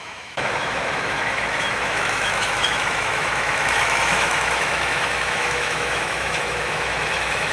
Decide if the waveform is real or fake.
fake